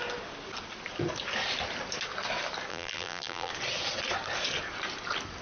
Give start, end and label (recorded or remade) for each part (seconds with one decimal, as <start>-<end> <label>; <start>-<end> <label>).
0.0-2.7 recorded; 2.7-3.5 remade; 3.5-5.4 recorded